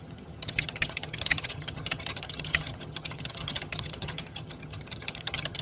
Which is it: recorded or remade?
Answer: remade